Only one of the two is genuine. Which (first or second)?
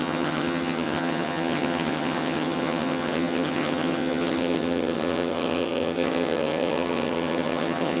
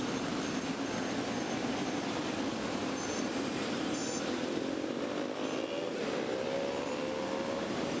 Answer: second